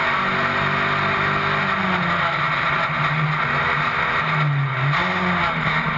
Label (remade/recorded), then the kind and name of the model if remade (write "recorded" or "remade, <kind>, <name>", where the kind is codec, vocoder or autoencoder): recorded